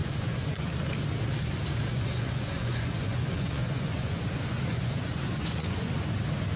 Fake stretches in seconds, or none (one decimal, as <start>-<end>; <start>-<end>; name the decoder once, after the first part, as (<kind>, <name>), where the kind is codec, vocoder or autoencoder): 0.0-0.7 (vocoder, Vocos); 1.9-5.9